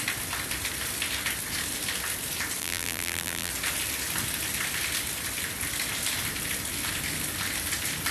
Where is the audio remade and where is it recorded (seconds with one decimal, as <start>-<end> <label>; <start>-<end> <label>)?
0.0-2.6 recorded; 2.6-3.5 remade; 3.5-8.1 recorded